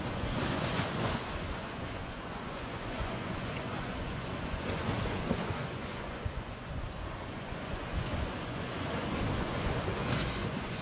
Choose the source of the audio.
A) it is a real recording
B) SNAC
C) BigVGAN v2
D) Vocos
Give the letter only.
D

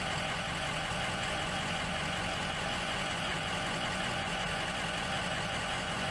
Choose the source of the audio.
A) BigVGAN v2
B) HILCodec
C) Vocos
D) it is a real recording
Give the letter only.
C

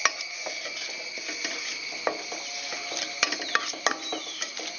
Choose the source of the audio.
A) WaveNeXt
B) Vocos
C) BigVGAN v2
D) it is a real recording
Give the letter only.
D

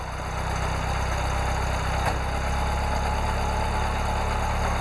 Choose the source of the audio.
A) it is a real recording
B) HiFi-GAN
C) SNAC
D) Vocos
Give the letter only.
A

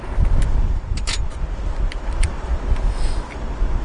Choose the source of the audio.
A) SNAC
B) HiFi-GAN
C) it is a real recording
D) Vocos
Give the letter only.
C